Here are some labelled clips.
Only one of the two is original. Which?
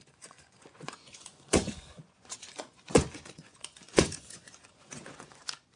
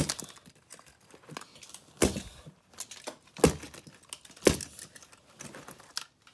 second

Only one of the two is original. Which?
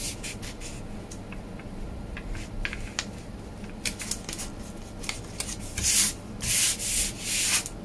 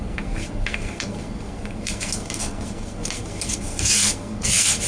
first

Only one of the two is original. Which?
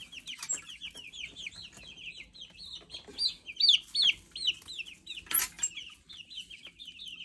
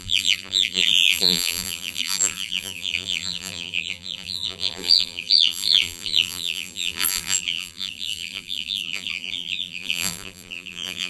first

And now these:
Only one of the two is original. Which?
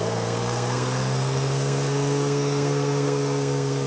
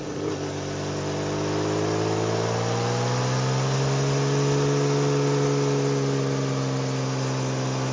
second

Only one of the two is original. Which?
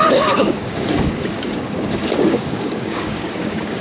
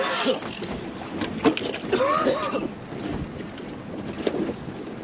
second